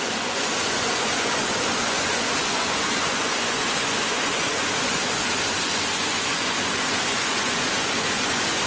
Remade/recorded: remade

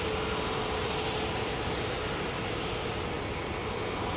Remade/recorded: recorded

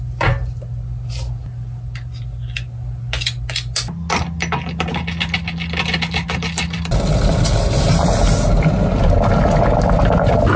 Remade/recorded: recorded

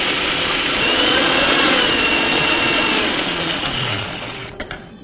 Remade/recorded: remade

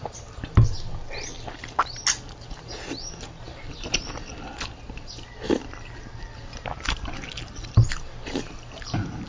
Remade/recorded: recorded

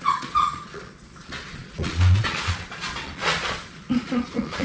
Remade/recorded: remade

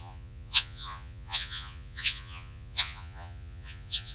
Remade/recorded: remade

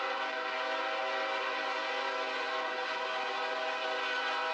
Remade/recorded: recorded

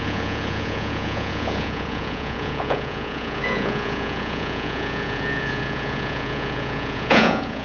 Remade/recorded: remade